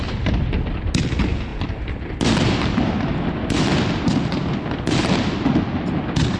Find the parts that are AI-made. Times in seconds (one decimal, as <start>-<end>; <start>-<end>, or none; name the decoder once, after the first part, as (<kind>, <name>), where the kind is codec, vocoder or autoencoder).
none

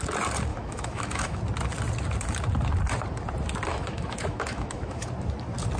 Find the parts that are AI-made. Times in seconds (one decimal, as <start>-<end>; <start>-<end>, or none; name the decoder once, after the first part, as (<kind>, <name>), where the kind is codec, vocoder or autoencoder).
0.5-1.4 (autoencoder, DAC-VAE); 3.7-5.1

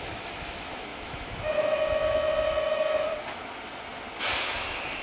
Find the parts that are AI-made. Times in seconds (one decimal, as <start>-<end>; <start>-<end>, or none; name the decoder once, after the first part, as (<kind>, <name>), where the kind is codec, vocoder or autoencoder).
0.0-3.1 (autoencoder, DAC-VAE)

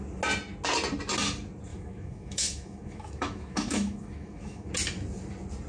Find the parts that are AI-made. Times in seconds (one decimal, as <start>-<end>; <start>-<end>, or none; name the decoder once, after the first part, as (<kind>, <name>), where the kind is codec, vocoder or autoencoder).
1.7-4.7 (autoencoder, DAC-VAE)

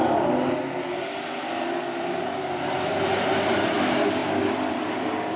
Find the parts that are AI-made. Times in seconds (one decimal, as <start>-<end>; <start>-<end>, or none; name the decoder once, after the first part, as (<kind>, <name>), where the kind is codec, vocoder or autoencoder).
none